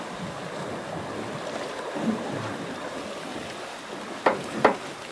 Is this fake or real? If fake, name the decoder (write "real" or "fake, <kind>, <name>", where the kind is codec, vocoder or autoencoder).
real